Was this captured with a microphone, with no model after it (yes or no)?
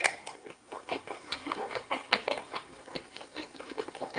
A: no